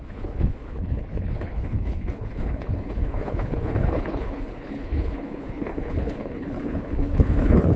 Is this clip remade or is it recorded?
remade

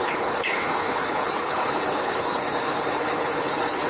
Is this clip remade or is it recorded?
remade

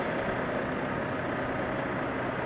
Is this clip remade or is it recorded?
recorded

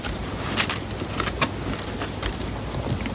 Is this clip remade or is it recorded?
recorded